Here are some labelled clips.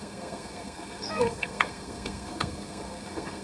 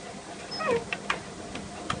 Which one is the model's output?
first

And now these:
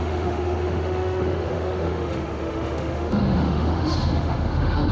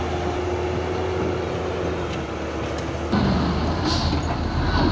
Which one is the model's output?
first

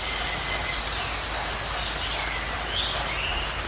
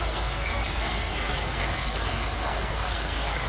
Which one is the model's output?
second